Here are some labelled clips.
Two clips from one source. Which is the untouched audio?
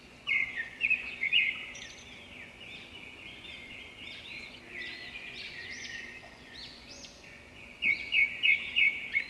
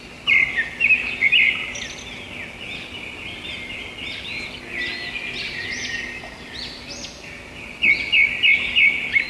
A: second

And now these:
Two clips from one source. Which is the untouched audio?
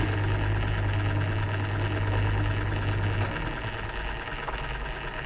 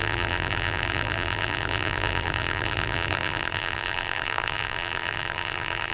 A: first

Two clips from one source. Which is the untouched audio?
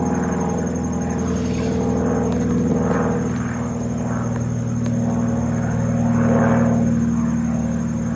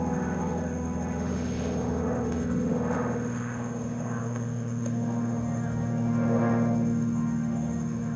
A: first